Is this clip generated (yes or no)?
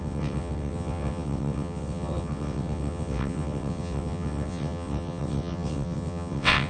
yes